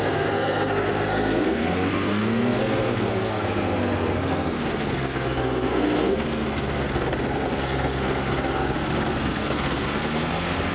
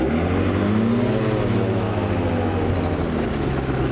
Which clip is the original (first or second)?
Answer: second